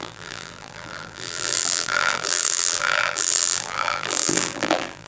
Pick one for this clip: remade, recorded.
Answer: remade